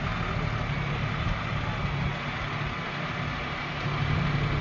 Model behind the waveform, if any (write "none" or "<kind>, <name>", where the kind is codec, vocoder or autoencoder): none